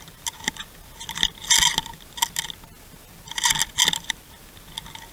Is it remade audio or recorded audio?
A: recorded